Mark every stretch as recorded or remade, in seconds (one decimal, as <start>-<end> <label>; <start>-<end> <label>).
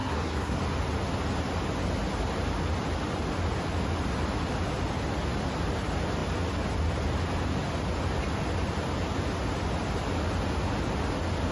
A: 0.0-0.6 remade; 0.6-11.5 recorded